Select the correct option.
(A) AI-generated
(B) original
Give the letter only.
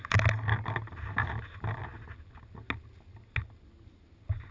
B